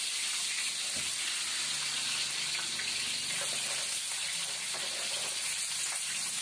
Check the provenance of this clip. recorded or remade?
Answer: recorded